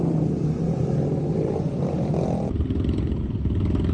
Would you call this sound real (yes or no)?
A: yes